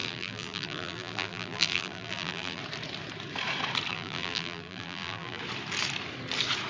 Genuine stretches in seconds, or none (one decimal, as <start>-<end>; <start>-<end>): 2.6-3.9; 5.4-6.7